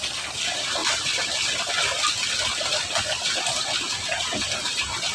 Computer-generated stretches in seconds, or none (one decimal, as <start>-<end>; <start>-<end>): none